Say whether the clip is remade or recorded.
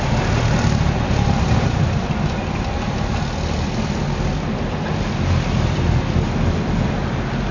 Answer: recorded